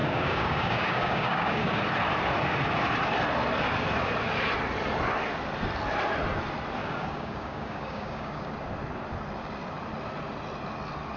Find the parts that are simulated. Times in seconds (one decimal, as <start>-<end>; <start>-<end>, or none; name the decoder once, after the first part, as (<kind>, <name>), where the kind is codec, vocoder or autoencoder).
0.0-1.8 (codec, DAC); 6.8-8.5